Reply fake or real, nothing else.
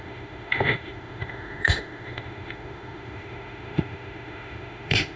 fake